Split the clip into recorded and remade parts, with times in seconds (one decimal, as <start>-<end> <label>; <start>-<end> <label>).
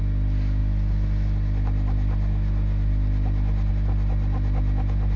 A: 0.0-5.2 recorded